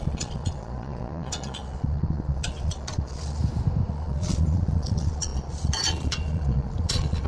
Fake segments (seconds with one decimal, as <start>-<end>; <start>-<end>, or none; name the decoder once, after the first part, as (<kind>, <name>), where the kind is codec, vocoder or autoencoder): 0.0-3.4 (vocoder, Vocos); 3.9-7.3